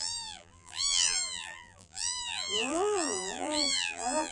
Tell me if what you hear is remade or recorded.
remade